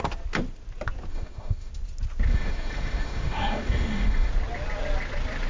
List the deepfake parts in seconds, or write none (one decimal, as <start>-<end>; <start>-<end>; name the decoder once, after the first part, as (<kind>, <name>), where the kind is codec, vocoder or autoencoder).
1.1-1.7 (autoencoder, DAC-VAE); 2.3-4.3